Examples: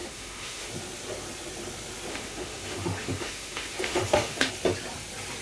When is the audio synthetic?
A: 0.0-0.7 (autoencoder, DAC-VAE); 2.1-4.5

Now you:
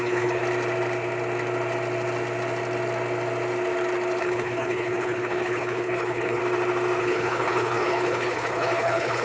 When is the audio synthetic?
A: 0.0-0.4 (codec, HILCodec); 4.2-6.4; 7.0-9.2

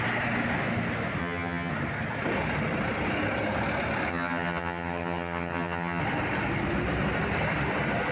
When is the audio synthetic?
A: 1.2-1.7 (vocoder, HiFi-GAN); 4.1-6.0

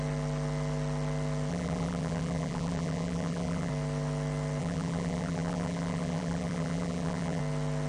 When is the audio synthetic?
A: 1.5-3.7 (vocoder, BigVGAN v2); 4.6-7.4

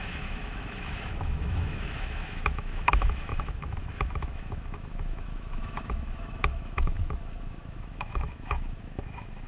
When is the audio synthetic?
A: 0.0-9.5 (autoencoder, DAC-VAE)

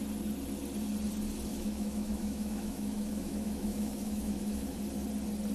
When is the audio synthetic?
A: 1.5-4.8 (autoencoder, DAC-VAE)

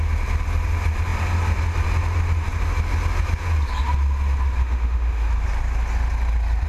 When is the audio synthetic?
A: 4.6-5.3 (autoencoder, DAC-VAE)